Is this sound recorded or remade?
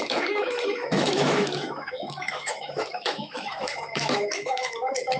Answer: remade